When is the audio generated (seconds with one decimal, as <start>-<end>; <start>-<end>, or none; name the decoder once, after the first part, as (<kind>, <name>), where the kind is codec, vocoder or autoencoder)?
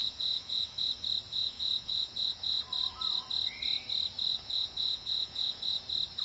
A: 0.0-0.9 (vocoder, Vocos); 1.3-2.6; 4.3-5.8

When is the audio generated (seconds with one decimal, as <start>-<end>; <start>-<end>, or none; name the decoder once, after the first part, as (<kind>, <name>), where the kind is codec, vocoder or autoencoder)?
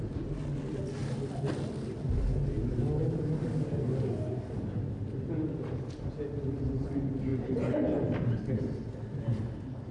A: none